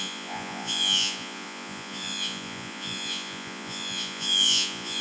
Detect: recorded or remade remade